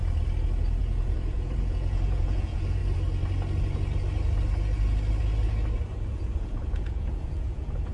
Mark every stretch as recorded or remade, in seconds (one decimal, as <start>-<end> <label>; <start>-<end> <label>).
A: 0.0-0.8 recorded; 0.8-2.8 remade; 2.8-6.2 recorded; 6.2-7.9 remade